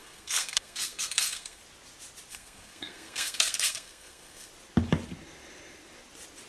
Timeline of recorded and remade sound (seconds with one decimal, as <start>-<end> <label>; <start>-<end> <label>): 0.0-1.6 remade; 1.6-2.3 recorded; 2.3-4.5 remade; 4.5-6.5 recorded